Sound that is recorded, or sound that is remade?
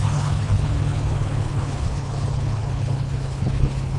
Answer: remade